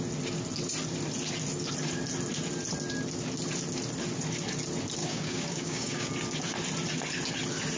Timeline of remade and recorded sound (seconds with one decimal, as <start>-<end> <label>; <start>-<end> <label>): 0.0-5.0 recorded; 5.0-6.1 remade; 6.1-7.8 recorded

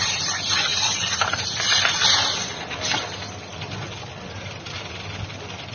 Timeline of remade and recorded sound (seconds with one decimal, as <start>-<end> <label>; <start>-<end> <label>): 0.0-5.7 recorded

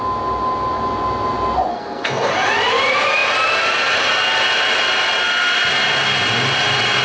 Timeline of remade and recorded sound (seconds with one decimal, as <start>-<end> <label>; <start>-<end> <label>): 0.0-1.7 recorded; 1.7-2.3 remade; 2.3-7.0 recorded

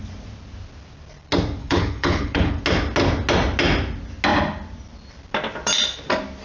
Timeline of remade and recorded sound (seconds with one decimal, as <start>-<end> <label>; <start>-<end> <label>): 0.0-1.6 recorded; 1.6-2.6 remade; 2.6-6.4 recorded